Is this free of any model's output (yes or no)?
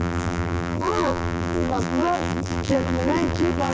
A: no